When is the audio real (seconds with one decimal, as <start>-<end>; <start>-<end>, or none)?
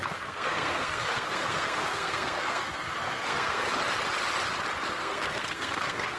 3.7-4.9